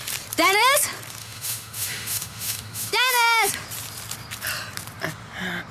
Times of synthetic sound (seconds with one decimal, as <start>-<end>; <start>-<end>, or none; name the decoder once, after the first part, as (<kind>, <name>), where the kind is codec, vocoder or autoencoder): 1.2-3.5 (autoencoder, DAC-VAE)